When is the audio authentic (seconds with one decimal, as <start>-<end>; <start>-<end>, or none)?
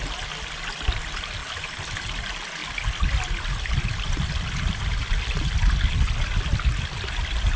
0.0-7.6